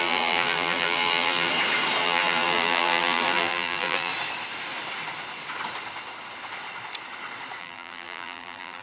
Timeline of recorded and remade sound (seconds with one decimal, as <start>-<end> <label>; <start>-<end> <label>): 0.0-1.5 remade; 1.5-2.0 recorded; 2.0-4.1 remade; 4.1-7.6 recorded; 7.6-8.8 remade

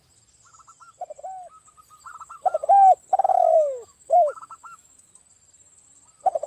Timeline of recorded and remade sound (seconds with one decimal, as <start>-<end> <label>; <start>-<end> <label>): 0.0-3.3 recorded; 3.3-5.0 remade; 5.0-6.5 recorded

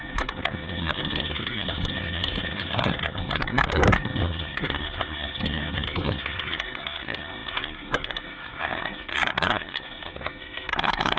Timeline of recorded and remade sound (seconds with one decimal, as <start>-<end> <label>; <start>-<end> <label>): 0.0-11.2 remade

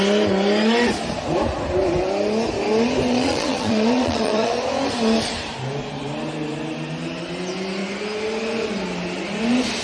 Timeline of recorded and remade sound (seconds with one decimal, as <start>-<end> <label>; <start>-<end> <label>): 0.0-3.1 recorded; 3.1-4.5 remade; 4.5-9.8 recorded

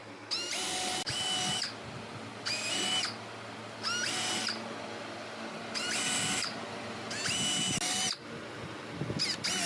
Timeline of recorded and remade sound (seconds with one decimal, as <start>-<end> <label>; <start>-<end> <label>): 0.0-9.7 recorded

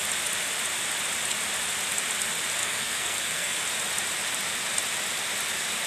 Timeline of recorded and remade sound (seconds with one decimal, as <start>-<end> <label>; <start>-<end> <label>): 0.0-2.6 recorded; 2.6-3.6 remade; 3.6-5.9 recorded

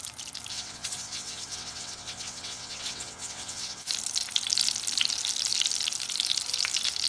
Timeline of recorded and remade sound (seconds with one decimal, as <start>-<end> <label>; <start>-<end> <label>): 0.0-0.5 recorded; 0.5-3.9 remade; 3.9-7.1 recorded

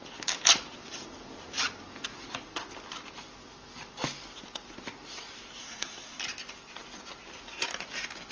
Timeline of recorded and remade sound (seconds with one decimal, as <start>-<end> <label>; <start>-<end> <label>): 0.0-5.6 recorded; 5.6-6.2 remade; 6.2-8.3 recorded